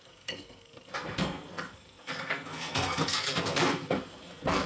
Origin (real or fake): fake